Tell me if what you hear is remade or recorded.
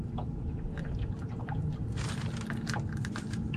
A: recorded